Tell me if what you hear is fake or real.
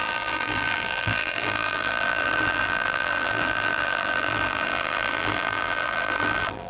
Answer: fake